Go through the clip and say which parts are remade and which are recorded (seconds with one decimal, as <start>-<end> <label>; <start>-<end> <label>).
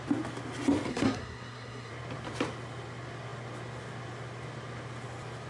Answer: 0.0-0.9 recorded; 0.9-1.9 remade; 1.9-5.5 recorded